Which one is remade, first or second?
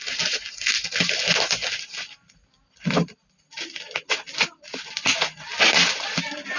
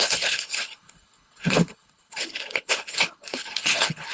second